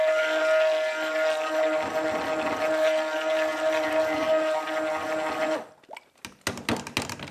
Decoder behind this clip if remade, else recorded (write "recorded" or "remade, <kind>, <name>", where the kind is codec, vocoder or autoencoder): recorded